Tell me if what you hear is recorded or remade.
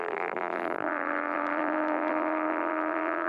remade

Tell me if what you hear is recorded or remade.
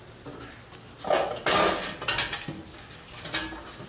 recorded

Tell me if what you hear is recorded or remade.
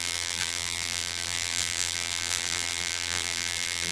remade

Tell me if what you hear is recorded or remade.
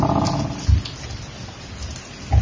recorded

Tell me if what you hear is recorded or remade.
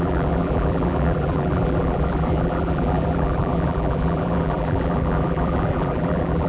remade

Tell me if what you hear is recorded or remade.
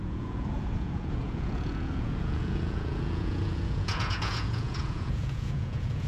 remade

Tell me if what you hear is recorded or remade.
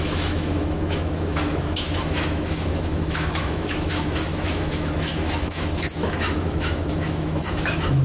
remade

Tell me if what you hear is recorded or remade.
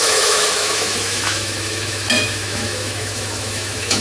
remade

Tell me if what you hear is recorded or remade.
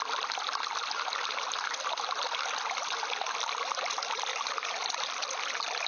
recorded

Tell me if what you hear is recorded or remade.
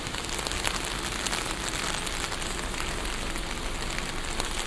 recorded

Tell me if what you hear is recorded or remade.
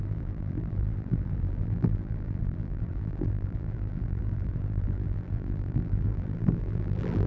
remade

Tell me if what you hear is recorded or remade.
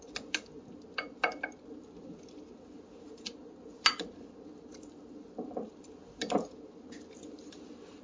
recorded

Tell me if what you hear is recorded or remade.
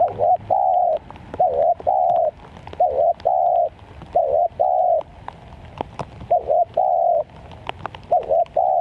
recorded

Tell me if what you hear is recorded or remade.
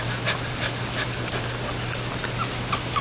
recorded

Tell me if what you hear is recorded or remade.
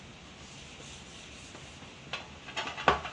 recorded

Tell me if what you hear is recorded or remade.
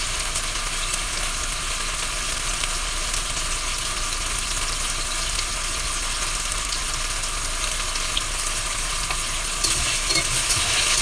recorded